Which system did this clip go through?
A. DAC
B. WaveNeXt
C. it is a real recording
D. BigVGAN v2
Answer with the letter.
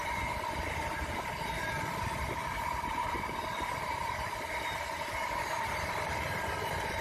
D